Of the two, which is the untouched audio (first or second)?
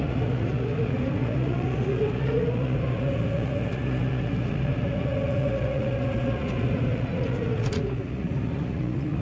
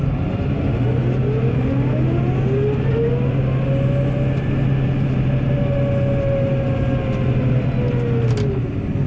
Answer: second